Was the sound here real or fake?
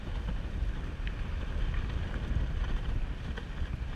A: real